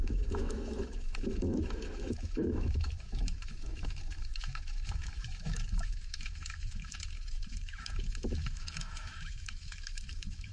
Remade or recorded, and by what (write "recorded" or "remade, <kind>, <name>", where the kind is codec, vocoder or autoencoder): remade, autoencoder, DAC-VAE